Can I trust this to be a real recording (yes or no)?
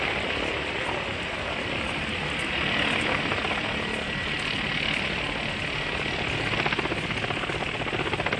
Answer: yes